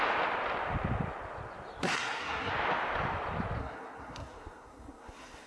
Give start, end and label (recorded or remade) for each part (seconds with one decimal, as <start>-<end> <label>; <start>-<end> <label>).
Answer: 0.0-1.8 recorded; 1.8-2.5 remade; 2.5-3.6 recorded; 3.6-5.5 remade